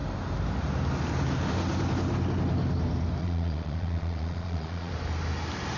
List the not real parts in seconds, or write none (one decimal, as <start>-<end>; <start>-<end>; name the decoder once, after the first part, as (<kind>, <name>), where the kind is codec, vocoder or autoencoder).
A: 3.2-4.9 (vocoder, Vocos)